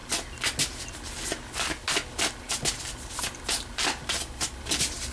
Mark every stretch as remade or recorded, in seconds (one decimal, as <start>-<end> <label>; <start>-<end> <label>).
0.0-5.1 recorded